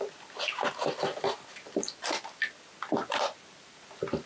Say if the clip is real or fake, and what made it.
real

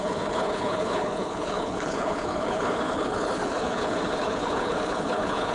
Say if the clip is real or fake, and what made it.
fake, codec, HILCodec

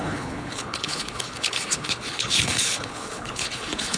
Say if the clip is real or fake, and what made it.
fake, codec, HILCodec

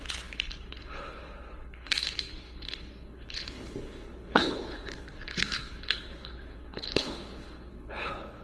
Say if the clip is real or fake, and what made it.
fake, codec, HILCodec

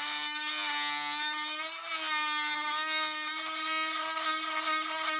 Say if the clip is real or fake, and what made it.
real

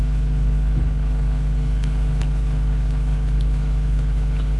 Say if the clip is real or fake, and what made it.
fake, codec, HILCodec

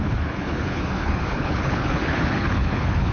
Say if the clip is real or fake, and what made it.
fake, codec, HILCodec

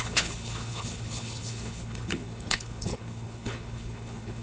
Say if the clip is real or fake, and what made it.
fake, codec, HILCodec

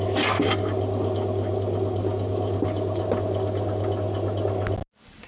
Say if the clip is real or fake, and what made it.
real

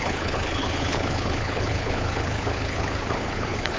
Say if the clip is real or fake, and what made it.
fake, codec, HILCodec